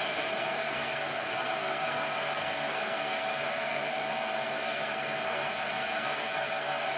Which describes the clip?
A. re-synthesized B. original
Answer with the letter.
A